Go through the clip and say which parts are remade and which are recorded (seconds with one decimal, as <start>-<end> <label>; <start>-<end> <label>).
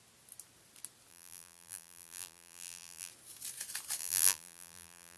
0.0-1.1 recorded; 1.1-3.1 remade; 3.1-4.0 recorded; 4.0-5.2 remade